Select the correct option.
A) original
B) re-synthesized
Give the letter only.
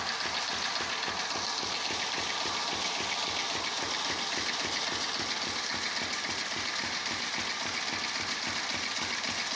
A